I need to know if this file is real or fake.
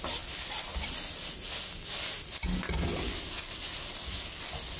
real